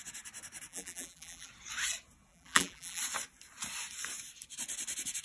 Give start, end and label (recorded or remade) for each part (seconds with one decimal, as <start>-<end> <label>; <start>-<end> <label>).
0.0-0.7 recorded; 0.7-1.5 remade; 1.5-2.3 recorded; 2.3-3.0 remade; 3.0-5.2 recorded